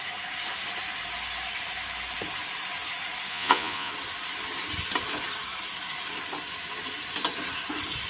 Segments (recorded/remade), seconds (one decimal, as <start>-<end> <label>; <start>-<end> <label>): 0.0-3.3 recorded; 3.3-3.9 remade; 3.9-8.1 recorded